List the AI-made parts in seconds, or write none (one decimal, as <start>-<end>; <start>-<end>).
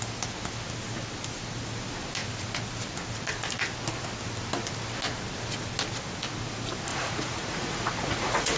6.9-8.6